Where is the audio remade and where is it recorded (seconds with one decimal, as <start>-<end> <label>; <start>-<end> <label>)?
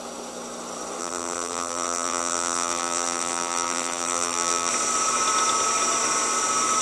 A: 0.0-1.0 recorded; 1.0-4.7 remade; 4.7-6.8 recorded